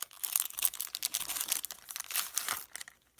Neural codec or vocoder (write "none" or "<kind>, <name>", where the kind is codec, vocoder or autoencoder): none